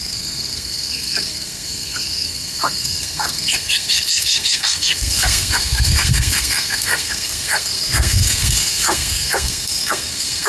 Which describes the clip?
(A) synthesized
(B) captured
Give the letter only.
A